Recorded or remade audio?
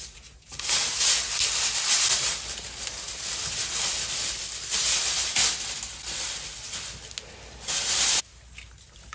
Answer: recorded